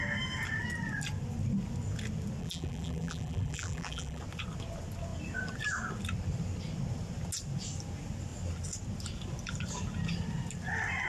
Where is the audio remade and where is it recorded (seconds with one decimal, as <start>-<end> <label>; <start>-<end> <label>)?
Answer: 0.0-2.4 recorded; 2.4-4.2 remade; 4.2-11.1 recorded